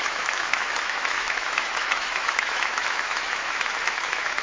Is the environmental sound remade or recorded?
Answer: remade